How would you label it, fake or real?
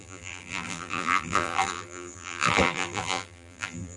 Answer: fake